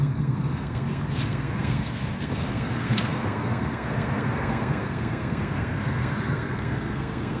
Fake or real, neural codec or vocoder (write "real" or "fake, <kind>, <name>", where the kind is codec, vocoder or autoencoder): fake, codec, SNAC